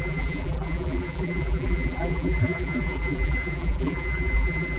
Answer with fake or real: fake